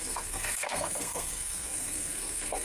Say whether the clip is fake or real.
fake